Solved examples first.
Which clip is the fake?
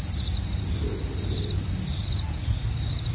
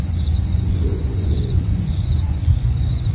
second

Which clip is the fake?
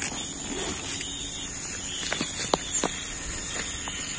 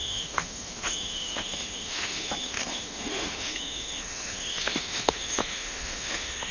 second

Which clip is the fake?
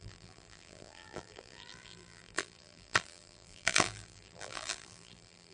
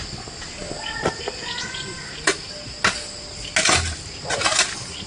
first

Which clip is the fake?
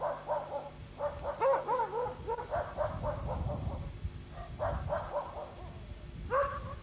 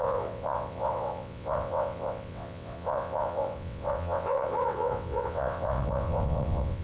second